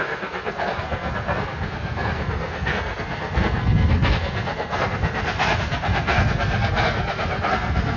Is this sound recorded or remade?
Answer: remade